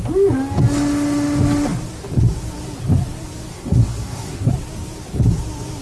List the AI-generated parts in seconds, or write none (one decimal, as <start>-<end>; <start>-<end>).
3.5-4.5